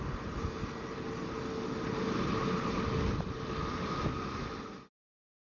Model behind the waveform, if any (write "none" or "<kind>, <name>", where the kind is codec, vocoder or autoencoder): none